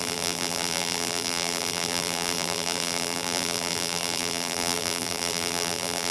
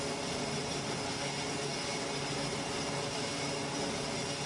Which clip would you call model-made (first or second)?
first